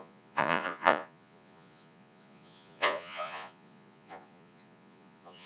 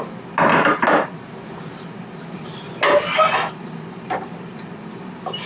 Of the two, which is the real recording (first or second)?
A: second